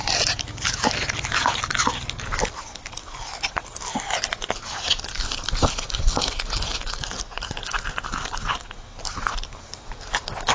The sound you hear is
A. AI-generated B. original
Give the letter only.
B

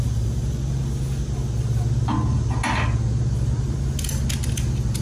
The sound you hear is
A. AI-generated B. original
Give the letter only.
B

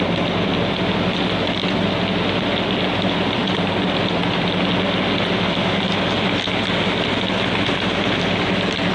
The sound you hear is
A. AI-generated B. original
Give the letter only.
B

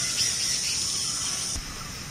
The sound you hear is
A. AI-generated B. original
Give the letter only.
B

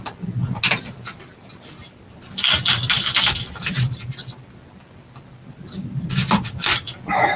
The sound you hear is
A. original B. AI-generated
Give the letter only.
A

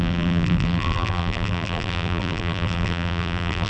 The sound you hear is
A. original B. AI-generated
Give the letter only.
B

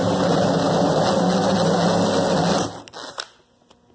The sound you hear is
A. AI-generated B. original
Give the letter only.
B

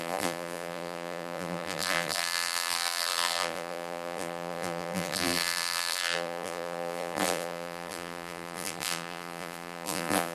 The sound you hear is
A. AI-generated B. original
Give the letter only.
A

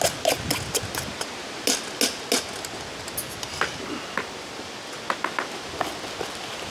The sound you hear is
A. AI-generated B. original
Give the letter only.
B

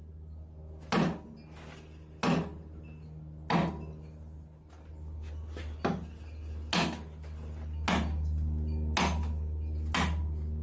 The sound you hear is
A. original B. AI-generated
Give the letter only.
A